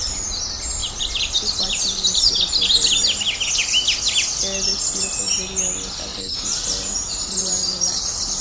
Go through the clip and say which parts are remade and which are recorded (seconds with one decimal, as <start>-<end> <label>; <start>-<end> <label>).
0.0-0.8 recorded; 0.8-2.3 remade; 2.3-6.1 recorded; 6.1-8.4 remade